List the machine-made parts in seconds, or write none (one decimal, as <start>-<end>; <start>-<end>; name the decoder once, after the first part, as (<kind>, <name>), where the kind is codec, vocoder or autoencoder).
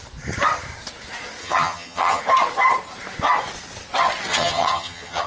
1.4-2.2 (vocoder, HiFi-GAN); 4.3-5.3